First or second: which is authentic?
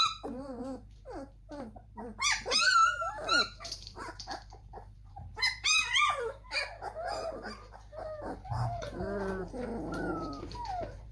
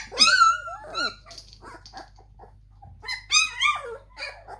second